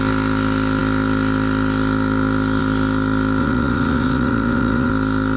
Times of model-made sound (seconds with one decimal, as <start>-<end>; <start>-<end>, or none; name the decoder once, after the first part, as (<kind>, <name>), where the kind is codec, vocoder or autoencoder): 3.4-4.9 (vocoder, Vocos)